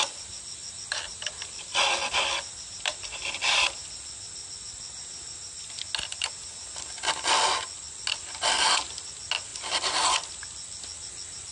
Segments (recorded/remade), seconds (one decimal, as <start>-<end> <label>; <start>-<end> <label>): 0.0-11.5 recorded